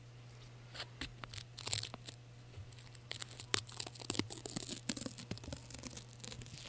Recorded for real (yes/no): yes